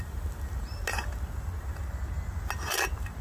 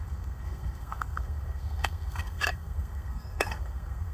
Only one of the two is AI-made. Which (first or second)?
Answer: second